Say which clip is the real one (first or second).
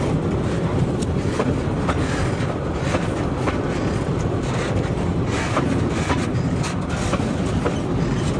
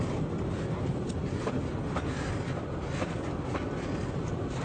second